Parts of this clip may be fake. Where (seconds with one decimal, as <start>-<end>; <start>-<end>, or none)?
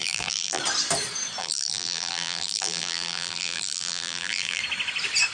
0.0-0.6; 1.4-4.6